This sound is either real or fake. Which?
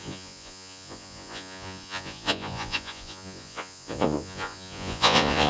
fake